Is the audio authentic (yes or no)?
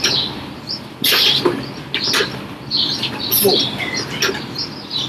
yes